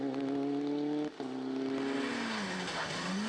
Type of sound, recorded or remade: recorded